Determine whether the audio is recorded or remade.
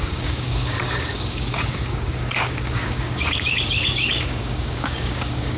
remade